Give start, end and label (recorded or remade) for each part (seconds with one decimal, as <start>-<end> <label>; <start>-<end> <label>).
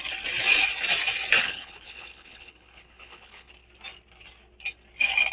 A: 0.0-1.4 recorded; 1.4-3.5 remade; 3.5-5.3 recorded